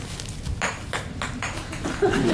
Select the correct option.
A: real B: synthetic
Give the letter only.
A